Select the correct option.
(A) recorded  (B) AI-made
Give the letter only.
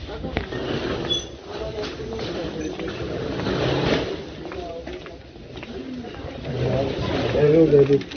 A